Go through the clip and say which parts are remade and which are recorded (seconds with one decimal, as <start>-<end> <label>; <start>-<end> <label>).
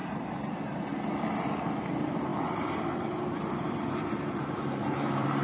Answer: 0.0-0.9 remade; 0.9-1.9 recorded; 1.9-5.4 remade